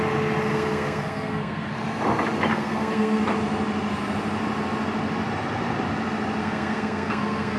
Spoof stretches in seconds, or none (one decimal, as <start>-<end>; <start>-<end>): 0.5-1.7; 2.5-3.2; 6.4-7.6